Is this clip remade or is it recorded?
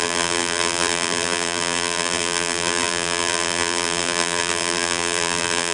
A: remade